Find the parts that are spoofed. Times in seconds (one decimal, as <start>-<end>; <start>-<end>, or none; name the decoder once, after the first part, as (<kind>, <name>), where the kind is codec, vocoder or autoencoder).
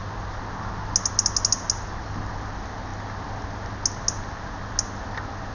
none